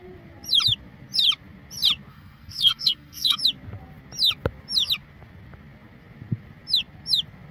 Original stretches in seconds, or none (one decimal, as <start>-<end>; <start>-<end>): 0.0-2.1; 3.4-7.5